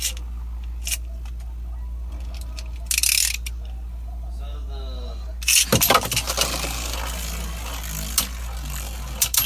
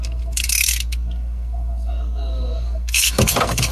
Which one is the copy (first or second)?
second